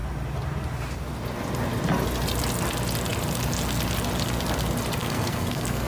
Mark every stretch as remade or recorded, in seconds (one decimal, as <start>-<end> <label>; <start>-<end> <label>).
0.0-5.0 recorded; 5.0-5.9 remade